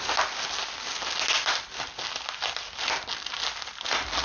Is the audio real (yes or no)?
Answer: yes